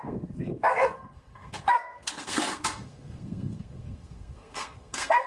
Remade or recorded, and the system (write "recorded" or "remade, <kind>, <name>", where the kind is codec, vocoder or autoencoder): remade, codec, SNAC